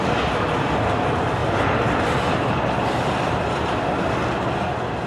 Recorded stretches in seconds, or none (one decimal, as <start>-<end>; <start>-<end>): 0.0-5.1